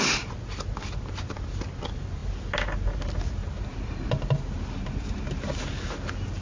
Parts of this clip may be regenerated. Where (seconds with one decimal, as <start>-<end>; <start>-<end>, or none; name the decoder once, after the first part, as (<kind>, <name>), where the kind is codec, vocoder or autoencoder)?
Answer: none

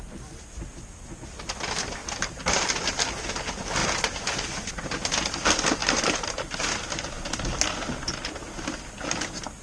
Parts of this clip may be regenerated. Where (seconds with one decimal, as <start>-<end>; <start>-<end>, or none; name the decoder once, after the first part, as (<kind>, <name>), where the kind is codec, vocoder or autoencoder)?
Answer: 2.0-2.9 (vocoder, BigVGAN v2); 5.8-6.6